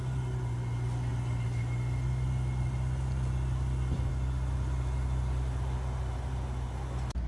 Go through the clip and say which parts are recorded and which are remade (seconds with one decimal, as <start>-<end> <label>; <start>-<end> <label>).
0.0-7.3 recorded